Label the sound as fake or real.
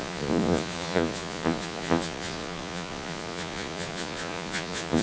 fake